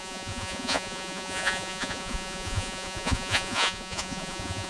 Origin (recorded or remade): remade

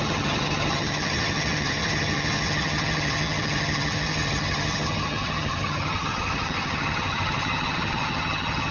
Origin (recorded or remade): remade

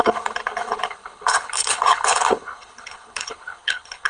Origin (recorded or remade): remade